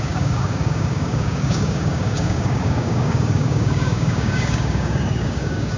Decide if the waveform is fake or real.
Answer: fake